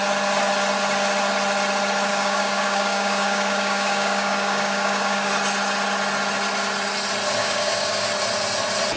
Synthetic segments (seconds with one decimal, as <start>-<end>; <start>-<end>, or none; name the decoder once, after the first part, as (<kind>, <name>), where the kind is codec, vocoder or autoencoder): 2.1-5.3 (codec, DAC); 7.4-8.1